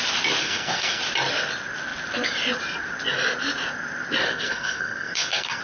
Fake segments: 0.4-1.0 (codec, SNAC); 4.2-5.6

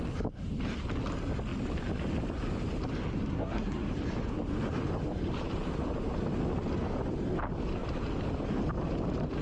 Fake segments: 3.3-3.9 (codec, SNAC)

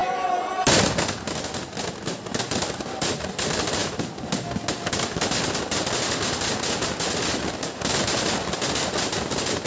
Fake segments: none

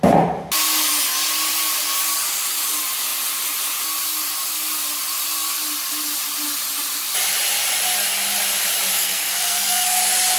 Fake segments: 8.9-10.0 (codec, SNAC)

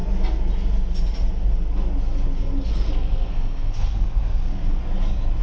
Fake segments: 2.7-4.8 (codec, SNAC)

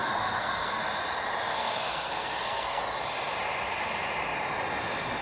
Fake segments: 0.0-0.8 (codec, SNAC); 1.5-2.8

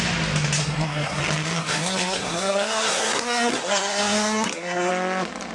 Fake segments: 0.6-1.2 (codec, SNAC); 1.6-4.9